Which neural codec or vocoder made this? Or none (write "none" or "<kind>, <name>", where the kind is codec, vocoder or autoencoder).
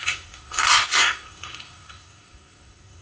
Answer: codec, SNAC